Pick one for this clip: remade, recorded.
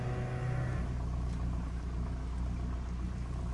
recorded